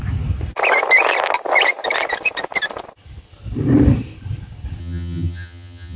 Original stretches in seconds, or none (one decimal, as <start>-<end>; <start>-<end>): 0.0-4.8